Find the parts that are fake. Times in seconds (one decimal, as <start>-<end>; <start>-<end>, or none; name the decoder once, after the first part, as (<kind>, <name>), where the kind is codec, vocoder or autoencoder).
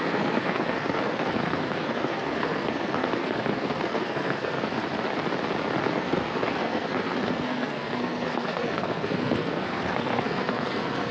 0.0-4.8 (codec, SNAC); 5.8-11.1